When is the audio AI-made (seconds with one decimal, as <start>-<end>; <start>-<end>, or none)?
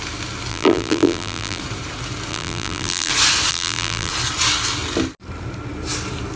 0.5-1.6; 2.3-3.1; 3.5-4.1